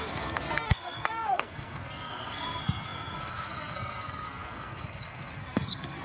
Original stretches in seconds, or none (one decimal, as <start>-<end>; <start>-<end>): none